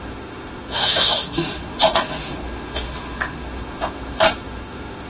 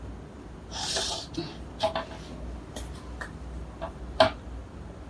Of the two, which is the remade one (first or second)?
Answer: first